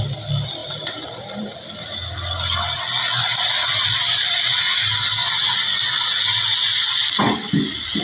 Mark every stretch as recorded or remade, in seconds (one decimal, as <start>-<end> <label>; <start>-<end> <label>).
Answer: 0.0-0.6 recorded; 0.6-1.7 remade; 1.7-8.0 recorded